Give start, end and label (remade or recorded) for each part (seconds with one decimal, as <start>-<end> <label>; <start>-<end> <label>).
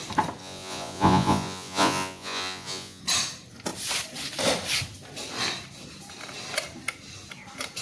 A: 0.0-0.4 recorded; 0.4-3.0 remade; 3.0-7.8 recorded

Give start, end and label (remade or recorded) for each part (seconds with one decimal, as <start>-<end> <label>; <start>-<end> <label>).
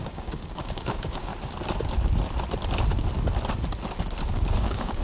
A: 0.0-1.3 remade; 1.3-4.3 recorded; 4.3-5.0 remade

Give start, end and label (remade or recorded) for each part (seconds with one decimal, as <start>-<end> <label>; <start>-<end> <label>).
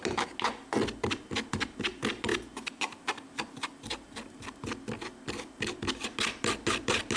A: 0.0-7.2 recorded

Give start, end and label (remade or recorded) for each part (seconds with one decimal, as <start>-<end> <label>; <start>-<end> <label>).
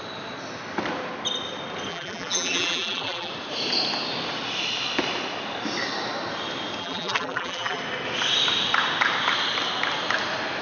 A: 0.0-1.9 recorded; 1.9-3.3 remade; 3.3-6.8 recorded; 6.8-7.8 remade; 7.8-10.6 recorded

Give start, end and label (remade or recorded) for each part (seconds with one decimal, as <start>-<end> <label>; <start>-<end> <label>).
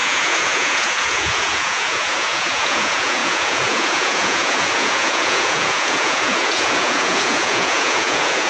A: 0.0-8.5 remade